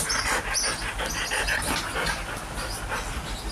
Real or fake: real